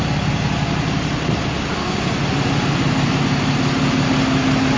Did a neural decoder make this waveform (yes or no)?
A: no